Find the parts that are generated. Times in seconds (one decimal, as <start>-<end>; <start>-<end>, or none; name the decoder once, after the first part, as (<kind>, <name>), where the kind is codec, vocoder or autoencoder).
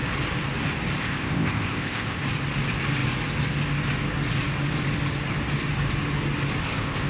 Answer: 1.0-2.2 (codec, ZipCodec); 6.6-7.1